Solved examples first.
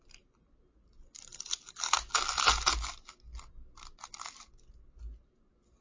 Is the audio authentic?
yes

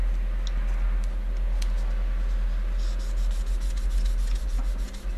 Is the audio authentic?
yes